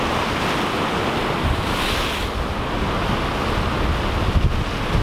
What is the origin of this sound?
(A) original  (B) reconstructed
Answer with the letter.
A